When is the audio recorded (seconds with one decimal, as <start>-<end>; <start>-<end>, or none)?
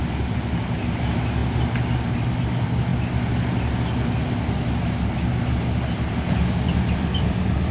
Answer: 0.0-7.7